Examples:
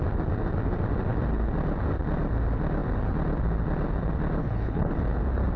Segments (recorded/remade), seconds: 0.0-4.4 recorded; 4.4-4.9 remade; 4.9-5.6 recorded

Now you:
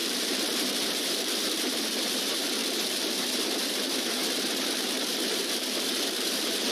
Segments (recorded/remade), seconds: 0.0-6.7 remade

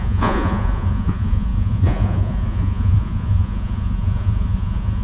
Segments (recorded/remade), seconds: 0.0-5.0 remade

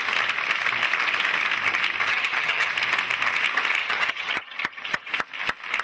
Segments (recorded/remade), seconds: 0.0-2.1 recorded; 2.1-2.7 remade; 2.7-3.8 recorded; 3.8-5.1 remade; 5.1-5.8 recorded

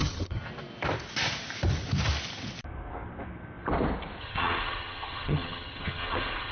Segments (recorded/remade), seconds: 0.0-0.4 remade; 0.4-4.2 recorded; 4.2-6.5 remade

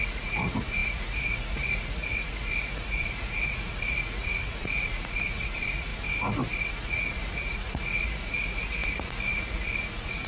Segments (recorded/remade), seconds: 0.0-5.9 remade; 5.9-6.7 recorded; 6.7-10.3 remade

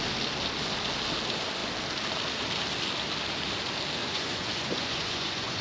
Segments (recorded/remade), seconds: 0.0-4.0 recorded; 4.0-5.6 remade